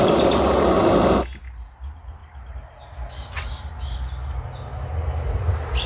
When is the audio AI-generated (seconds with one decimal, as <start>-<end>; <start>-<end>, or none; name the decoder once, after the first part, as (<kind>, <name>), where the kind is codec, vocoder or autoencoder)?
none